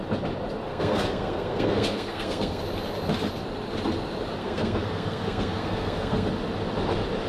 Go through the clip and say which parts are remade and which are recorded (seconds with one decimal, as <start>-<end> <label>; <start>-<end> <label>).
0.0-0.7 recorded; 0.7-2.6 remade; 2.6-4.4 recorded; 4.4-6.3 remade; 6.3-7.3 recorded